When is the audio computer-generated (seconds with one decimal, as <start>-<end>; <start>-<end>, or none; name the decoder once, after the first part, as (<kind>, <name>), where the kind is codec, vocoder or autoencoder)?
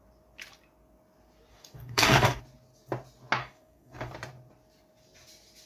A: 1.5-2.4 (codec, DAC); 3.4-4.1